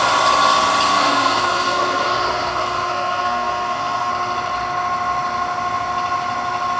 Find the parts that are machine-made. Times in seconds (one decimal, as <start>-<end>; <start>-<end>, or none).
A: 0.9-4.1